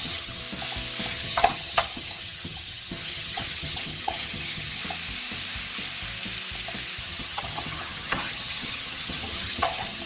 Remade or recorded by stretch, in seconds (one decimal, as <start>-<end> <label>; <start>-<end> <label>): 0.0-0.4 remade; 0.4-1.1 recorded; 1.1-4.8 remade; 4.8-7.0 recorded; 7.0-10.1 remade